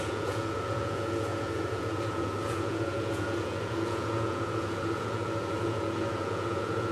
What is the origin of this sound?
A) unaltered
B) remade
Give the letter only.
B